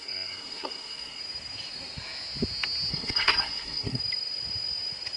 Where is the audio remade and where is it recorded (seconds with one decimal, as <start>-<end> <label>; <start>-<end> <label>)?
0.0-1.2 remade; 1.2-2.9 recorded; 2.9-4.0 remade; 4.0-5.2 recorded